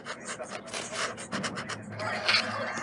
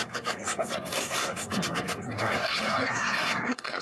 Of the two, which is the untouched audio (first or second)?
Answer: first